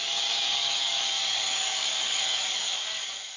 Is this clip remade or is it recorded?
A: remade